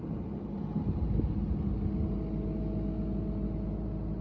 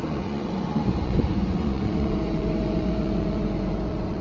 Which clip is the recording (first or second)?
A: first